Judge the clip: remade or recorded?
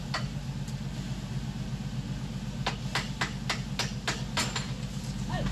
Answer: recorded